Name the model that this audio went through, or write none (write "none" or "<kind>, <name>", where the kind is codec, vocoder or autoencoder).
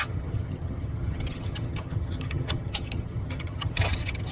vocoder, HiFi-GAN